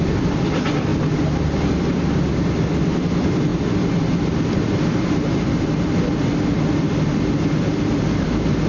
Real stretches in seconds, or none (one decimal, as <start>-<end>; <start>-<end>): 0.0-8.7